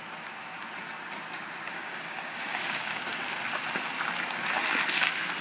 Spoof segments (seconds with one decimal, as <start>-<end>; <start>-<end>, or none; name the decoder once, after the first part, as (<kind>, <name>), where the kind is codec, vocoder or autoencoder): 1.7-3.0 (codec, DAC)